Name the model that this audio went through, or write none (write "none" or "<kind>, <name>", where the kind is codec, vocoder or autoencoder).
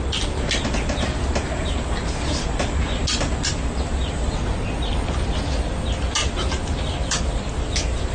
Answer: none